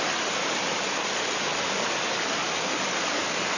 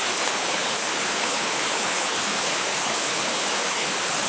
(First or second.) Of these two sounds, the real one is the first